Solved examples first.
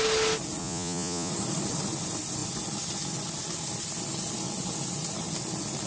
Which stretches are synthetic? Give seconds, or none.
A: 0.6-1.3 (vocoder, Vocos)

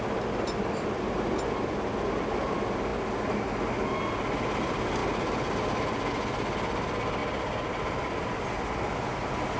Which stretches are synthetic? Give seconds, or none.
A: none